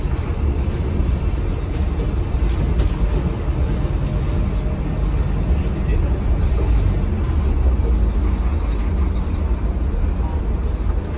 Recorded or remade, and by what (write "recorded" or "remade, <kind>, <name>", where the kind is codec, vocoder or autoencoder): recorded